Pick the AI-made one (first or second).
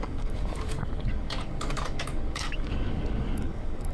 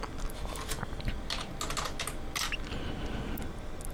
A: first